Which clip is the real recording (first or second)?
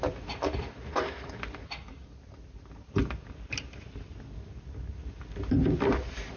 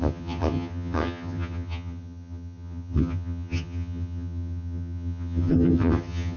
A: first